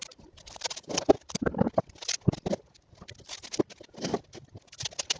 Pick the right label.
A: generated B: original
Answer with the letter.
B